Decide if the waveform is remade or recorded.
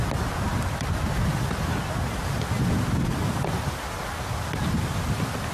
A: recorded